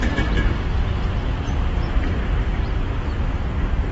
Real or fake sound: fake